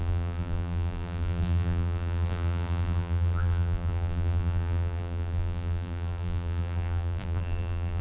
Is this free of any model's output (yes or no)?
no